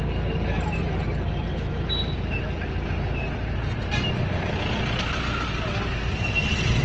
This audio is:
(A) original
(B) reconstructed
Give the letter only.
A